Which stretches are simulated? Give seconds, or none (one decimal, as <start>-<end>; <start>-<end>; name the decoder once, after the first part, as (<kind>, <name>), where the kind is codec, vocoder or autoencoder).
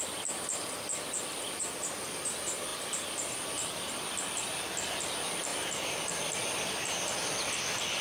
none